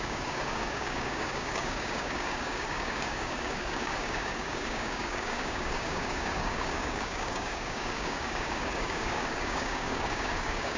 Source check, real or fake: fake